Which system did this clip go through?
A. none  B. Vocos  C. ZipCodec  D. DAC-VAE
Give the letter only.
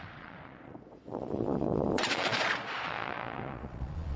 B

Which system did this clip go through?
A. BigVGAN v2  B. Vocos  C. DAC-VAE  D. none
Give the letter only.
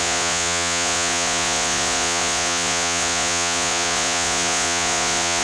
B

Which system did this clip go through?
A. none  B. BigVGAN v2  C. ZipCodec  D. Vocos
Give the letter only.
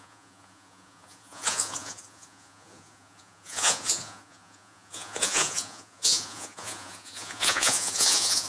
D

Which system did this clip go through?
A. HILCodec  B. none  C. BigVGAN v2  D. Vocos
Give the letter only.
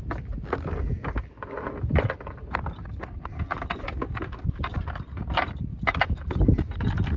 B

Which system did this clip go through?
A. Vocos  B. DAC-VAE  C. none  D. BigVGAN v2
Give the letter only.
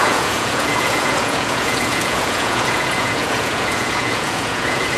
A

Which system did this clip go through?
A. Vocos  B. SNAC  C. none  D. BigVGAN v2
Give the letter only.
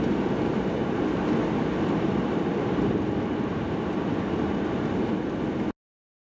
C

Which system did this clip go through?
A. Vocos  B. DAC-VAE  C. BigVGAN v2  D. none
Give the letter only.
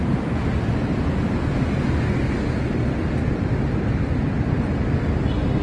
D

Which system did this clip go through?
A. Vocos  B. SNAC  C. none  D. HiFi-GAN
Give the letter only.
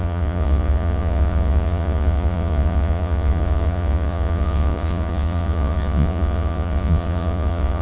A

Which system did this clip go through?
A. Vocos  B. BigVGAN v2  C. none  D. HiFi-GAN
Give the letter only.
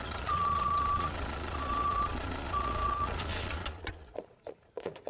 A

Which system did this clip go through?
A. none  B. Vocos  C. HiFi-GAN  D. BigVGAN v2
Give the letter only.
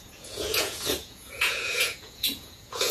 B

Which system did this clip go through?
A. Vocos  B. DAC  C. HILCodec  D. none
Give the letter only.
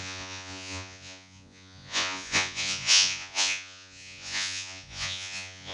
A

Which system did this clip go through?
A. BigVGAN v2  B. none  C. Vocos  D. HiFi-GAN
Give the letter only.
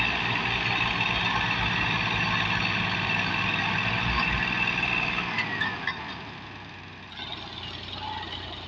B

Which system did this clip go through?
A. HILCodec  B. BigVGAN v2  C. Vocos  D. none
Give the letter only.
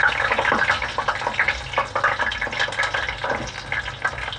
D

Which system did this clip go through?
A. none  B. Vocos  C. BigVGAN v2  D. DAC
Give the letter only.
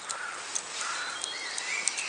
A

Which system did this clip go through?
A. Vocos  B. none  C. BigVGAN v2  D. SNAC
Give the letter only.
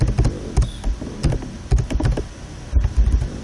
B